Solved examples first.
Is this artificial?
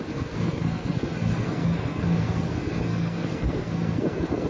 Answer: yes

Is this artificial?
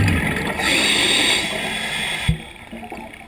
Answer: no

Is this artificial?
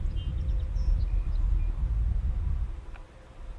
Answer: no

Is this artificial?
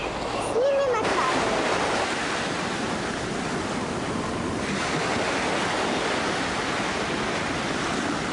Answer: no